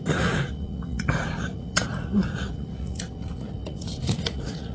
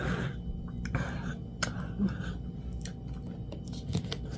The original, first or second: second